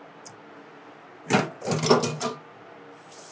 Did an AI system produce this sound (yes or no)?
no